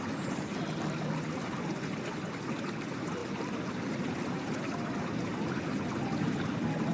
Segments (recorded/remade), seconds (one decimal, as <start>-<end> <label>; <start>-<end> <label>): 0.0-6.9 recorded